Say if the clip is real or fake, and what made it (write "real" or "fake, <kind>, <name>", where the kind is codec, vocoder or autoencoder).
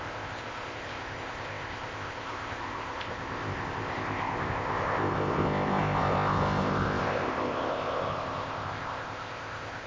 fake, codec, ZipCodec